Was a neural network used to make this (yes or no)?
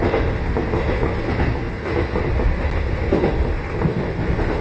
no